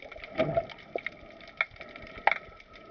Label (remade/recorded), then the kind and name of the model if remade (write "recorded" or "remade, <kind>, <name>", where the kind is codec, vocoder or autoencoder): recorded